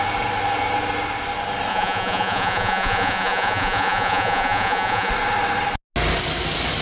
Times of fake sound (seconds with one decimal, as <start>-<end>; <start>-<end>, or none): 1.7-5.1